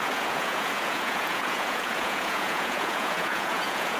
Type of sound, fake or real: fake